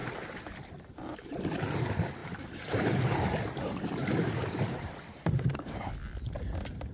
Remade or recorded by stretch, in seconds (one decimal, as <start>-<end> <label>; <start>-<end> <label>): 0.0-1.7 remade; 1.7-2.2 recorded; 2.2-5.9 remade; 5.9-6.9 recorded